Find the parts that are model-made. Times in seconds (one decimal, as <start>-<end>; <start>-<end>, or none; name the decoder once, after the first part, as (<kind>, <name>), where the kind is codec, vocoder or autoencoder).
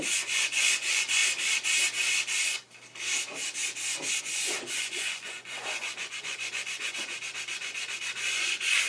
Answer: 0.0-1.2 (vocoder, Vocos); 4.2-8.9